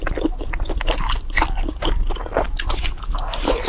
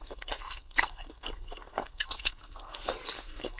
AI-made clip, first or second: second